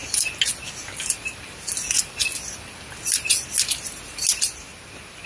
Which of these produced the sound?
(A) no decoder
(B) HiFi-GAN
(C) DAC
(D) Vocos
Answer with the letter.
A